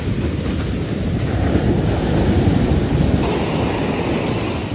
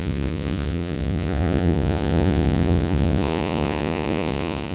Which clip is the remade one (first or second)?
second